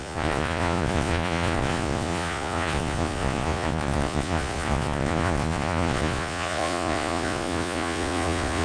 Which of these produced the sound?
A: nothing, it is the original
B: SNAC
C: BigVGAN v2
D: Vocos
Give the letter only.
D